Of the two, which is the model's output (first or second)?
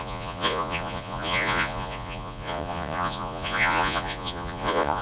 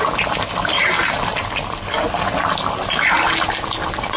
first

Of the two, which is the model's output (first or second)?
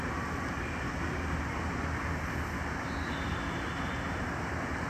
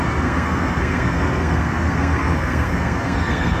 second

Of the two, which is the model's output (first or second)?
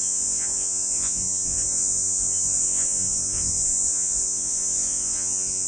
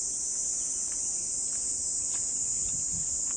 first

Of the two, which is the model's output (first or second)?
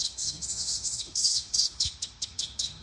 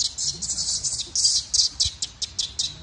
first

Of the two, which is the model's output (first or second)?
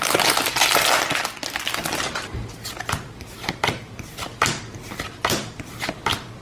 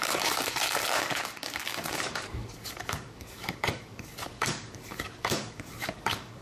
second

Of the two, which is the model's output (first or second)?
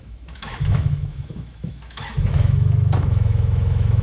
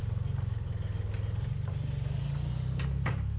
first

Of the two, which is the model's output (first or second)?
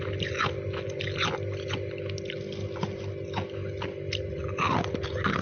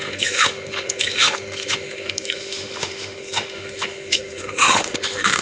second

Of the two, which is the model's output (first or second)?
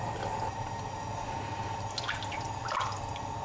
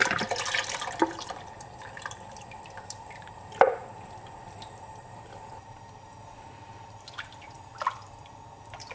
second